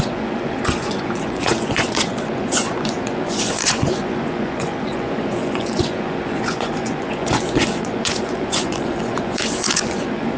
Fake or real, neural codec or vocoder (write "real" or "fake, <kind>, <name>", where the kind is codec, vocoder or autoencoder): fake, vocoder, Vocos